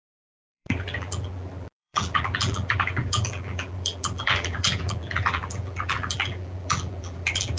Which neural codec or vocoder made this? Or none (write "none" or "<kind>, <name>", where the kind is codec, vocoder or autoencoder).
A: vocoder, BigVGAN v2